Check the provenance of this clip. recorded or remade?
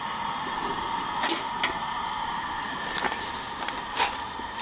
recorded